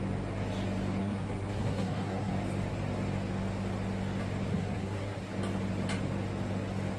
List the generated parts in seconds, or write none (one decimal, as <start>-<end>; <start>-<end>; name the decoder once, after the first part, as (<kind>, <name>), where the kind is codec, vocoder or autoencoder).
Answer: 1.0-2.3 (codec, SNAC); 4.5-5.2

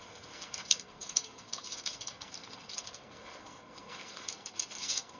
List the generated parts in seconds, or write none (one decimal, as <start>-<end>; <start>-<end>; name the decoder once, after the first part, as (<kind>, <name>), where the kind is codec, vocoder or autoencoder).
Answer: 0.0-5.2 (codec, SNAC)

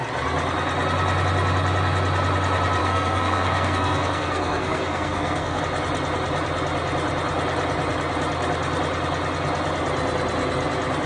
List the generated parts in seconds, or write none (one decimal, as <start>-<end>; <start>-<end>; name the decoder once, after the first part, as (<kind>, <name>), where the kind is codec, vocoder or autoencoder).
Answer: 2.8-5.6 (codec, SNAC)

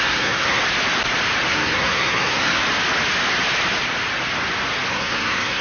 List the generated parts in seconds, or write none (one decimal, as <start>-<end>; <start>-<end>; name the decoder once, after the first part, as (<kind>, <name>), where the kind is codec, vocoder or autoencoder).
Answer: 0.0-0.6 (codec, SNAC); 1.5-2.6; 4.9-5.6